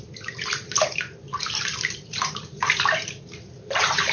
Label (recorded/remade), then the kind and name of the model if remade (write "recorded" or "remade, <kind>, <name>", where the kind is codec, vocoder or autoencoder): remade, vocoder, BigVGAN v2